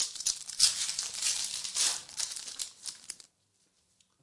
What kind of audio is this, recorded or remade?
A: remade